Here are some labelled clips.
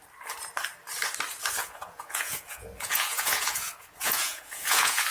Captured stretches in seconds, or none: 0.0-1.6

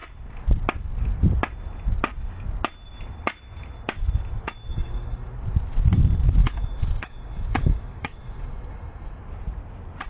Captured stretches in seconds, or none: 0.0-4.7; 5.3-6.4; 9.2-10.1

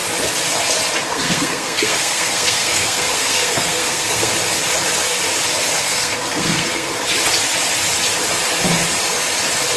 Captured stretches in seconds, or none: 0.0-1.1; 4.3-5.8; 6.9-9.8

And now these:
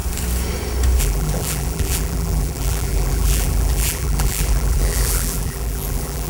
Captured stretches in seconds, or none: 0.0-1.0

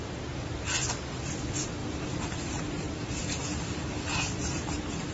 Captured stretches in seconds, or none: 0.0-1.8

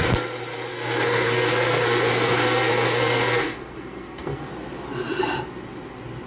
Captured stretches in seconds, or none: 0.0-0.7; 4.5-6.3

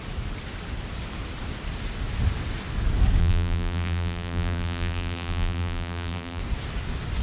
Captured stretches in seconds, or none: 0.0-3.2; 6.4-7.2

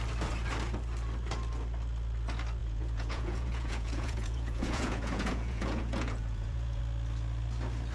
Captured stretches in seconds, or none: 0.0-2.6; 6.8-7.9